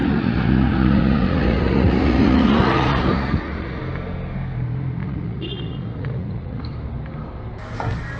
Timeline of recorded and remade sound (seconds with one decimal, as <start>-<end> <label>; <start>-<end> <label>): 0.0-3.8 remade; 3.8-5.0 recorded; 5.0-6.6 remade; 6.6-8.2 recorded